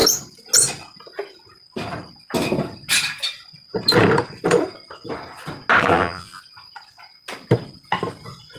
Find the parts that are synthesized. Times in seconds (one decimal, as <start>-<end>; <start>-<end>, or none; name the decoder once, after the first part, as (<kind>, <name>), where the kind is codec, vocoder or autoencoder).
5.8-6.4 (vocoder, BigVGAN v2)

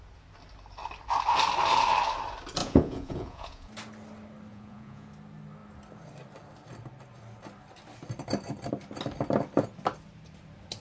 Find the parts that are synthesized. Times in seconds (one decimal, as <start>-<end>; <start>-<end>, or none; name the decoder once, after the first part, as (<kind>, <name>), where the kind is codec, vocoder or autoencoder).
2.6-3.7 (vocoder, Vocos); 4.5-5.1

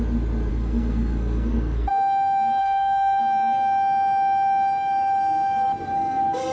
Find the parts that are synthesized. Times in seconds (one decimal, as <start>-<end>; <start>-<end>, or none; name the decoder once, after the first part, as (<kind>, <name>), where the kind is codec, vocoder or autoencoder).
0.5-1.9 (codec, SNAC); 2.6-3.2

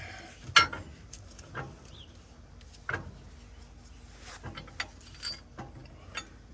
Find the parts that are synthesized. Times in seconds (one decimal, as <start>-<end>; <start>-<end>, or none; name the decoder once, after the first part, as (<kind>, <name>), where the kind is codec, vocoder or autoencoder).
none

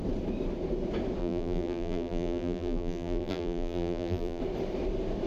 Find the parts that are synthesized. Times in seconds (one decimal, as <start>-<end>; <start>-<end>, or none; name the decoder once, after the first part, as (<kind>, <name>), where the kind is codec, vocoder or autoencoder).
1.2-4.4 (vocoder, BigVGAN v2)

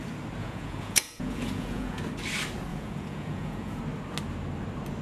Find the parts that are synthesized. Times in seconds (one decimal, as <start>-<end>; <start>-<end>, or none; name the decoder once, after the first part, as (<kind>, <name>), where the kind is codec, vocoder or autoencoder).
0.4-2.0 (vocoder, Vocos); 2.7-3.8

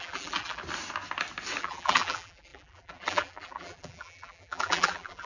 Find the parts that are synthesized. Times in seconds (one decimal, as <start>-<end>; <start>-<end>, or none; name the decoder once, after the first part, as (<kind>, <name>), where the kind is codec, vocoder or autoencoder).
0.0-0.6 (vocoder, BigVGAN v2); 1.6-5.3